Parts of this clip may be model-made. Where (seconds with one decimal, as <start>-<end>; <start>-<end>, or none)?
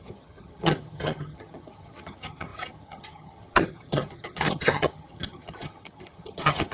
0.0-6.7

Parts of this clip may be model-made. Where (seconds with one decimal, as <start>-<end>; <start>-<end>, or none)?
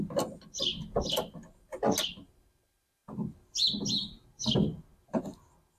none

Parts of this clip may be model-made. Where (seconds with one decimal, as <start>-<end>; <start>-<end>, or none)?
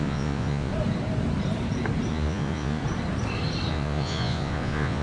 0.0-0.7; 2.1-2.8; 3.7-5.0